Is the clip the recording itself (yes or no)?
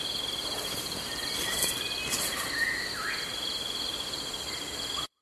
yes